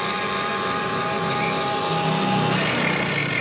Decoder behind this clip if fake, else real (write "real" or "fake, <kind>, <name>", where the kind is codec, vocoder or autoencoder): real